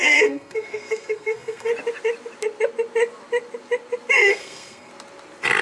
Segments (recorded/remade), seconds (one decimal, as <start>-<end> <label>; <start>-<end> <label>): 0.0-1.7 remade; 1.7-4.3 recorded; 4.3-4.9 remade; 4.9-5.6 recorded